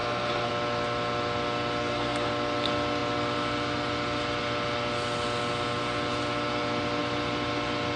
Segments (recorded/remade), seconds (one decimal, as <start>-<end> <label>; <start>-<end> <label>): 0.0-0.5 remade; 0.5-1.8 recorded; 1.8-2.3 remade; 2.3-8.0 recorded